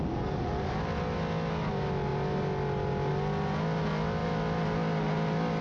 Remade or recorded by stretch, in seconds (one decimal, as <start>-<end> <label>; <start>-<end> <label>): 0.0-5.6 recorded